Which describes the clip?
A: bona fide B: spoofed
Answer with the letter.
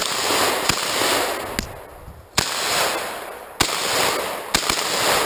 A